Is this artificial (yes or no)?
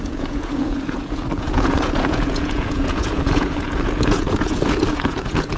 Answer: yes